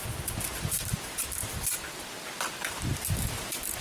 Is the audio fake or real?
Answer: real